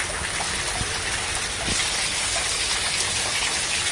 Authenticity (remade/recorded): recorded